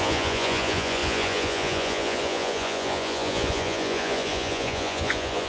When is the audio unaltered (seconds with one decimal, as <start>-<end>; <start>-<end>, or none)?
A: none